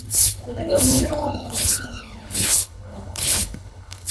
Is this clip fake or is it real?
fake